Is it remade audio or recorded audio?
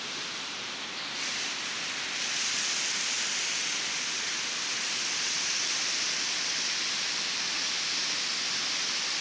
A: recorded